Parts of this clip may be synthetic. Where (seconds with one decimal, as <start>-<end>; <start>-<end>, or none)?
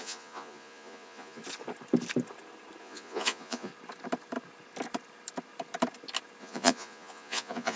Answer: 0.0-1.4; 2.8-3.7; 6.4-7.8